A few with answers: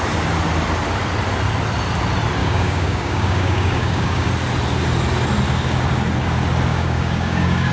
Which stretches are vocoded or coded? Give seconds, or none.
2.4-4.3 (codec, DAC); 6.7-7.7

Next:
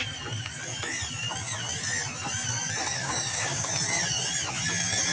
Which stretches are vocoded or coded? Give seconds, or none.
3.0-3.7 (codec, DAC)

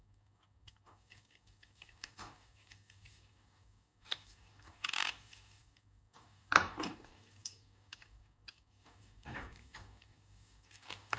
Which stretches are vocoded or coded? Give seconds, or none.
0.0-11.2 (codec, DAC)

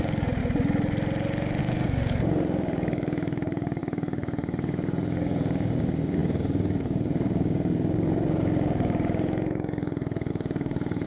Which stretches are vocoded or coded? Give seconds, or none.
0.0-0.4 (codec, DAC); 1.6-11.1